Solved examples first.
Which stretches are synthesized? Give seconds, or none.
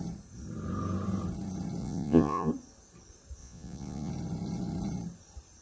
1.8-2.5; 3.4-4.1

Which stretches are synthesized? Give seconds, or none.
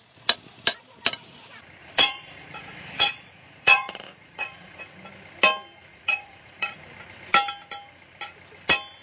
1.8-4.8; 5.9-6.8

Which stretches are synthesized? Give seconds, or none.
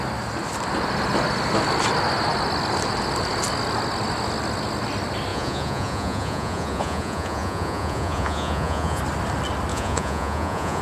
5.3-9.0; 9.7-10.8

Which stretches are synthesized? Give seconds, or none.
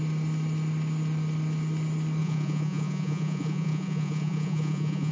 2.2-5.1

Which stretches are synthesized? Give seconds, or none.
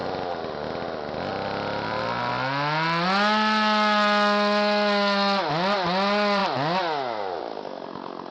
none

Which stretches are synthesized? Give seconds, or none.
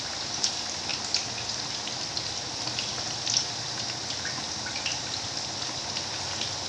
none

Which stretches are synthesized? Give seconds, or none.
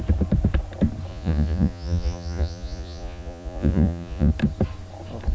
1.1-4.3